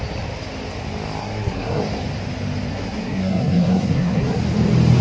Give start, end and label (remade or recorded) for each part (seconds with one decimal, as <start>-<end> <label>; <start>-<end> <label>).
0.0-1.2 recorded; 1.2-1.8 remade; 1.8-2.7 recorded; 2.7-4.4 remade; 4.4-5.0 recorded